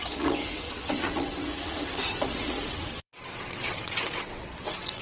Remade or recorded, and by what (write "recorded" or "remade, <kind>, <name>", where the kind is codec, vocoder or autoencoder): remade, vocoder, WaveNeXt